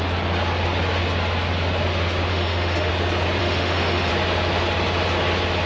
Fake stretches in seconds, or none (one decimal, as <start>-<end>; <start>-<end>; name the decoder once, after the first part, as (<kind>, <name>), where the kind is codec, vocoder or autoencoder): 2.3-2.9 (autoencoder, DAC-VAE); 3.4-4.1